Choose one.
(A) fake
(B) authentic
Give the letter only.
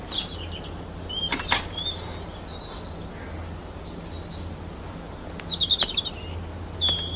B